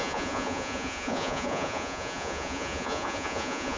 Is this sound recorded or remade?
remade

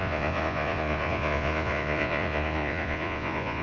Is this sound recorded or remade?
remade